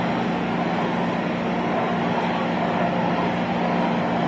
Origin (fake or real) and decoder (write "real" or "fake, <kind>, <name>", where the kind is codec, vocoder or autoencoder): real